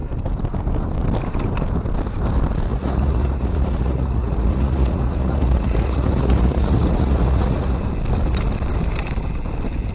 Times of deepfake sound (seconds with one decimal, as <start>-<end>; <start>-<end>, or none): 2.7-7.8